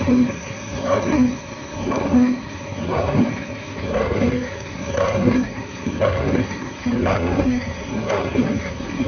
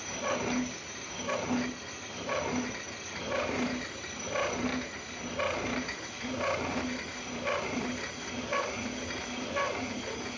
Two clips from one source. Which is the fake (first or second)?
first